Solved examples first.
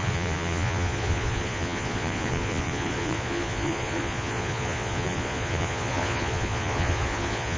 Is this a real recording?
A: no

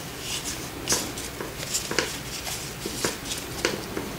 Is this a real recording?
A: yes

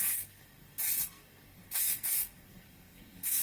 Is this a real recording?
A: no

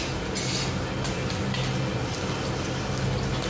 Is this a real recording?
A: yes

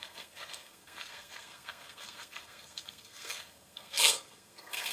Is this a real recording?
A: no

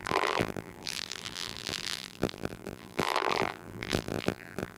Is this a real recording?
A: no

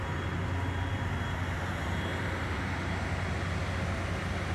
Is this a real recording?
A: yes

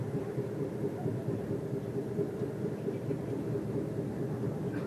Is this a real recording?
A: no